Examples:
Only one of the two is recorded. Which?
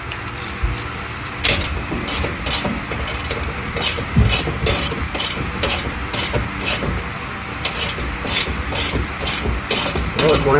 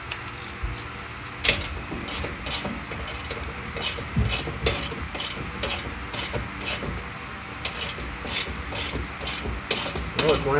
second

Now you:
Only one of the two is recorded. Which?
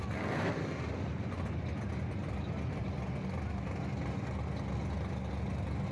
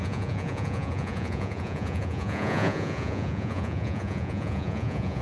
first